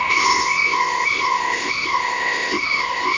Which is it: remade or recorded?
remade